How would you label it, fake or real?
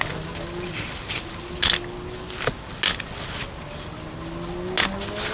real